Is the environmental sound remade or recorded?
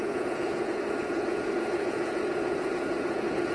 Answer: remade